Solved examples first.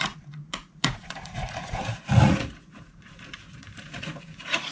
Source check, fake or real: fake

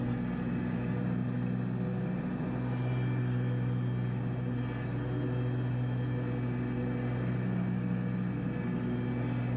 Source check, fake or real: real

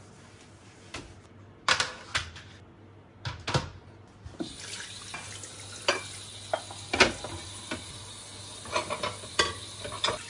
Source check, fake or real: real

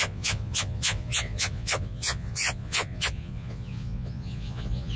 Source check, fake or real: fake